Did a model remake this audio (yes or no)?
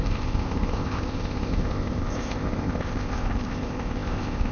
yes